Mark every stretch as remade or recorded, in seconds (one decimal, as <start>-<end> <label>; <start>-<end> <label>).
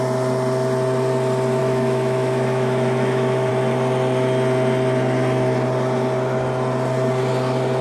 0.0-1.6 recorded; 1.6-3.5 remade; 3.5-7.8 recorded